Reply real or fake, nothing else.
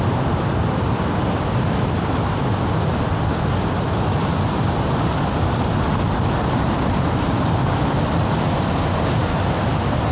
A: real